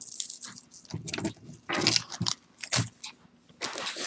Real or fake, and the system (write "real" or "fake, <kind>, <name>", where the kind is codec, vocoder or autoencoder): real